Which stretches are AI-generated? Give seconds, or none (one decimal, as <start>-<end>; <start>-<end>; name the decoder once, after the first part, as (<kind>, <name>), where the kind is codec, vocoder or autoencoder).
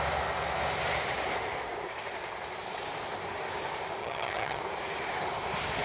4.0-4.6 (vocoder, HiFi-GAN)